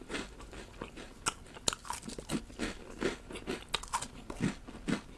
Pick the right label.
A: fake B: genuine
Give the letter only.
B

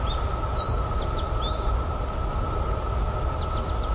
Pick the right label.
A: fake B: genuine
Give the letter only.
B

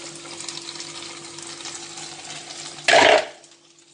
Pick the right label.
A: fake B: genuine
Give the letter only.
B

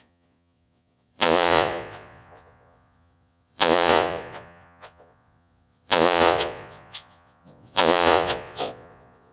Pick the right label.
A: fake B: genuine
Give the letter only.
A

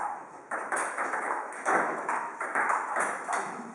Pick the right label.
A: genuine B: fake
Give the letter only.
B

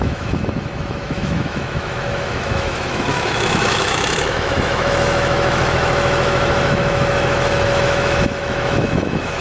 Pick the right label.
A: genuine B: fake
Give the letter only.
B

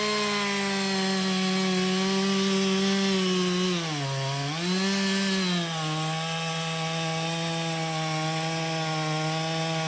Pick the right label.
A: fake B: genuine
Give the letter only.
B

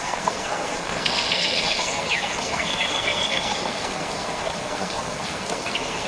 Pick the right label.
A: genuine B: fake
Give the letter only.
B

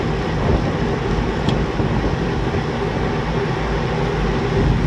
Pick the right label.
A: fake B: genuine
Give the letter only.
B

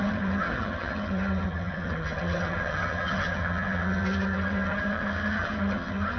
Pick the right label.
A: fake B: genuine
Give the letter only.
A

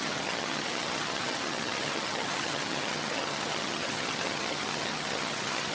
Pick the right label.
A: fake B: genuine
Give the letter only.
A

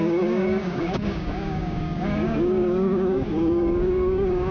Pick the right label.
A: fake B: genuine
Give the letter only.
A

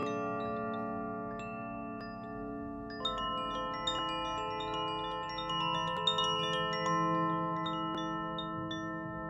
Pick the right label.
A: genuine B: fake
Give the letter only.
A